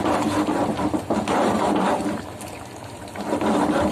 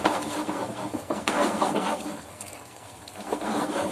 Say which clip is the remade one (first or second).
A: second